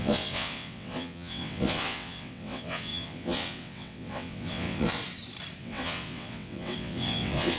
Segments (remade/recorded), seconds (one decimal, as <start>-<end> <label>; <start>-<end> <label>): 0.0-5.0 remade; 5.0-5.6 recorded; 5.6-7.6 remade